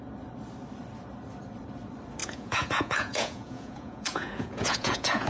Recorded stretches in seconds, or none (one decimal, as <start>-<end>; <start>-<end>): 0.0-2.2

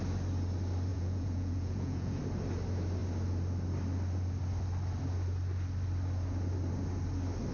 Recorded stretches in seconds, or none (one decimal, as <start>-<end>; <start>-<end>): 0.0-0.9; 2.2-7.5

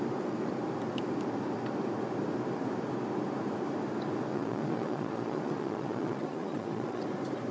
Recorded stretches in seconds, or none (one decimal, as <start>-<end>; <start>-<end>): 0.0-4.3; 7.0-7.5